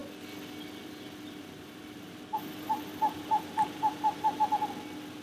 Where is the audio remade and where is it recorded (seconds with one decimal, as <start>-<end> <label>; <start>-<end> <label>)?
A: 0.0-1.4 recorded; 1.4-4.5 remade; 4.5-5.2 recorded